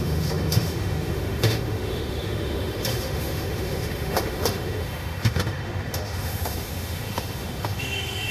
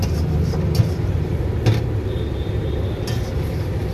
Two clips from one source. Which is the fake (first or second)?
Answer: first